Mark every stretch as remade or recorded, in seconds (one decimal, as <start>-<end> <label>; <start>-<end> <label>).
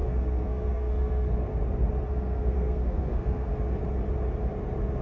0.0-1.5 remade; 1.5-2.1 recorded; 2.1-3.5 remade; 3.5-5.0 recorded